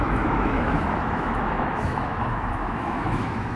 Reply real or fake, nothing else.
fake